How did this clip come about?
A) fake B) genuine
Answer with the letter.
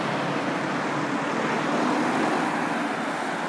B